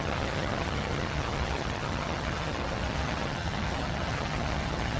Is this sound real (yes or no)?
no